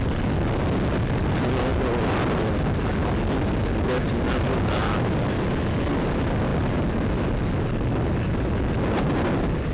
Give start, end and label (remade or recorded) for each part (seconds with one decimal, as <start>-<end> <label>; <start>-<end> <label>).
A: 0.0-9.7 recorded